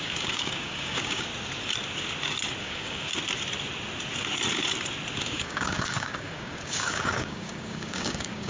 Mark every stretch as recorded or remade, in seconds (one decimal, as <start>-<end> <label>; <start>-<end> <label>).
0.0-1.3 remade; 1.3-2.6 recorded; 2.6-3.1 remade; 3.1-5.2 recorded; 5.2-8.5 remade